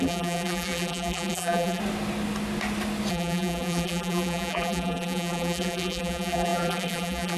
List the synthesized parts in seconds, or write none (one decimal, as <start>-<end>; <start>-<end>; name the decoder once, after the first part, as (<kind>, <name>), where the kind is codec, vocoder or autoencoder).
0.0-1.8 (vocoder, BigVGAN v2); 3.1-7.4